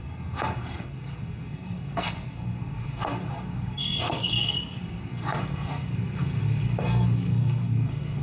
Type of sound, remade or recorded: remade